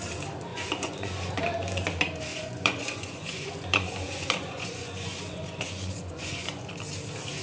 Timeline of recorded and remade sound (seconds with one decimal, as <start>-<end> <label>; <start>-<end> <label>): 0.0-0.5 recorded; 0.5-1.4 remade; 1.4-2.3 recorded; 2.3-6.7 remade; 6.7-7.4 recorded